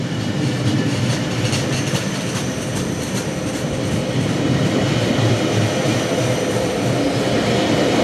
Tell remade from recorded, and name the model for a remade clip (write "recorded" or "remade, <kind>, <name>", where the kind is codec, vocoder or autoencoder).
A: recorded